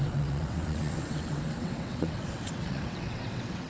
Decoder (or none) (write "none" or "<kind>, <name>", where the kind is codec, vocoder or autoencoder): vocoder, WaveNeXt